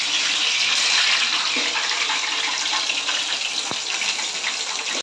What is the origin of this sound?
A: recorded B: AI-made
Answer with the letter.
A